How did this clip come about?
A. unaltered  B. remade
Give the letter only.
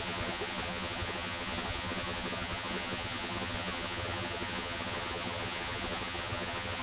B